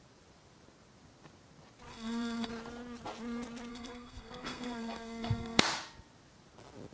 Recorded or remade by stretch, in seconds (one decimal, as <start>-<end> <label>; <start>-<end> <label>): 0.0-1.9 recorded; 1.9-2.5 remade; 2.5-3.7 recorded; 3.7-5.6 remade; 5.6-6.9 recorded